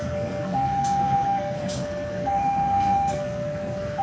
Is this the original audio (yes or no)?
no